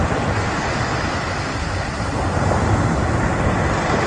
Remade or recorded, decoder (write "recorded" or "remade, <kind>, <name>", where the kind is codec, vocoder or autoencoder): recorded